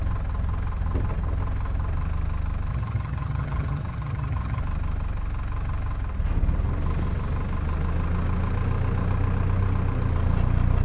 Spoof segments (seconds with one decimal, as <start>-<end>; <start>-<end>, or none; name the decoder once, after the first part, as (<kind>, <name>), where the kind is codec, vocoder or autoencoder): 2.7-4.6 (vocoder, HiFi-GAN)